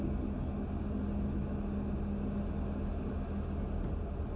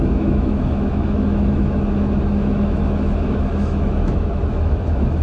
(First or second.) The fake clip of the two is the second